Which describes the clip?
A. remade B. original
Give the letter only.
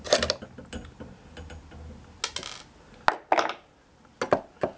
B